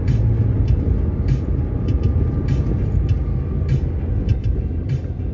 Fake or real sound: real